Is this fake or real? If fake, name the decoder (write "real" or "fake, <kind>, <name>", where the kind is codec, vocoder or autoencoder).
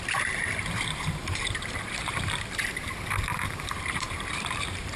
fake, vocoder, BigVGAN v2